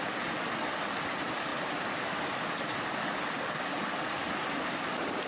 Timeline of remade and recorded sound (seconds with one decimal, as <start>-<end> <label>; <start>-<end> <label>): 0.0-5.3 recorded